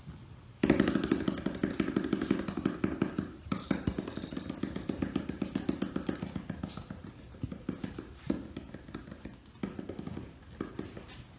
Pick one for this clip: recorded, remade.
recorded